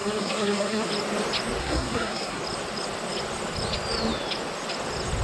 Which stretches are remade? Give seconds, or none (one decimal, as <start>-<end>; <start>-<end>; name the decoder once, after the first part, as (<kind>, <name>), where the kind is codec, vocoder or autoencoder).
0.0-0.9 (codec, SNAC); 1.6-2.4